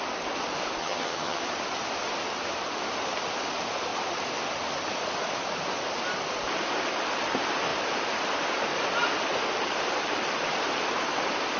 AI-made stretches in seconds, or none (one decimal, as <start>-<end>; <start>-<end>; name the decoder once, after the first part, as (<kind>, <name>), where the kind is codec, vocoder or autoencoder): 0.8-1.4 (vocoder, HiFi-GAN)